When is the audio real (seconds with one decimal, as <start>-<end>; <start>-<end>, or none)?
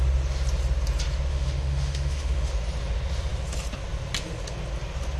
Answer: 0.0-1.3; 2.5-5.2